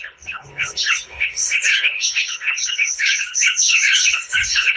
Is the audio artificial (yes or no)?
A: yes